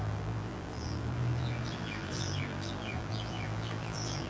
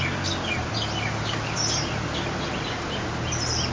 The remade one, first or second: first